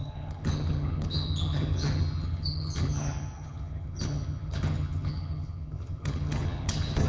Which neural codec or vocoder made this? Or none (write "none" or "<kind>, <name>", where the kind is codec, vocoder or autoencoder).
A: vocoder, HiFi-GAN